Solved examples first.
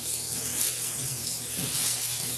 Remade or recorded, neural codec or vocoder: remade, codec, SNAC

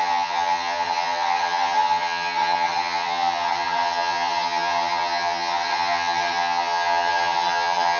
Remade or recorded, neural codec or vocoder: remade, vocoder, HiFi-GAN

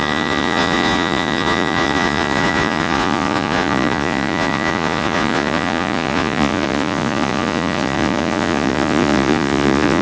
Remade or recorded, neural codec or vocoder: remade, vocoder, Vocos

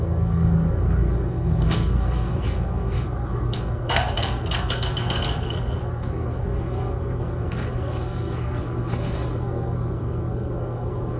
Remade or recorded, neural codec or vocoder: remade, codec, SNAC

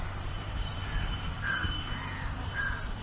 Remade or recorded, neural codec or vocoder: remade, vocoder, BigVGAN v2